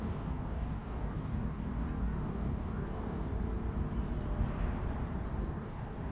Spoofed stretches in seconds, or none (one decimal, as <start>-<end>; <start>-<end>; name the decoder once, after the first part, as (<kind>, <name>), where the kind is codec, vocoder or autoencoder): 0.0-3.3 (codec, DAC); 5.4-6.1